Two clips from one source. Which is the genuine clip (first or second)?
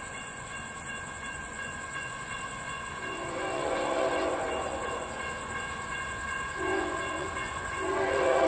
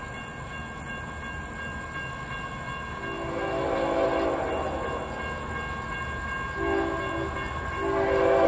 second